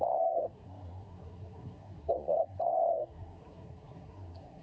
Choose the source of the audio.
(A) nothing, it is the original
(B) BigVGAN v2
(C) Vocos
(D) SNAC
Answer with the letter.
D